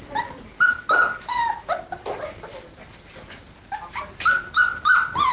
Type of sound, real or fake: real